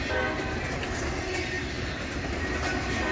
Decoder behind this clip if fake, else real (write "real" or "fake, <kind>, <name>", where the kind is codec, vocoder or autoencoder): real